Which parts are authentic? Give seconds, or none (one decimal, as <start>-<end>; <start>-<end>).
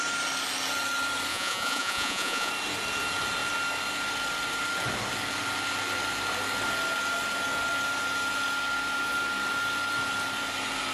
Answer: 0.0-1.3; 2.5-10.9